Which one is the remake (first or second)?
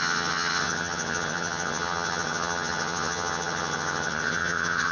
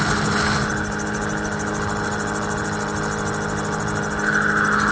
first